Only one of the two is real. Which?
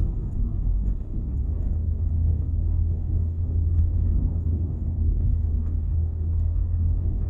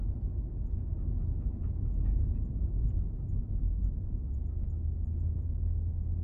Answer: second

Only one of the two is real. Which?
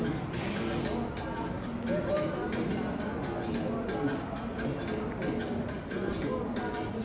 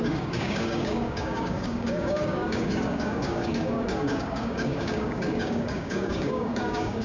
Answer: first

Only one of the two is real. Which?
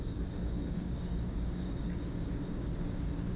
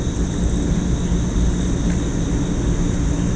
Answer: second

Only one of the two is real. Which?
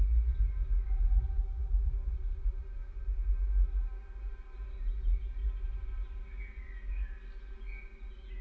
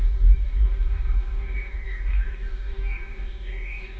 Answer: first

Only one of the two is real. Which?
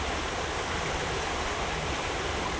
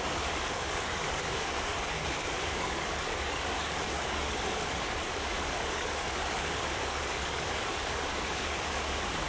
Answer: first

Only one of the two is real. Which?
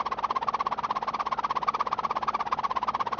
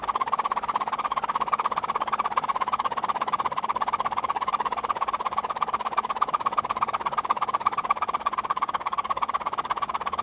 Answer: first